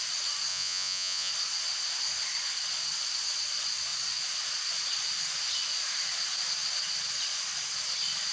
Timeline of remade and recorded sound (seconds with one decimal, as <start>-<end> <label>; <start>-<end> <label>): 0.0-0.5 recorded; 0.5-1.3 remade; 1.3-8.3 recorded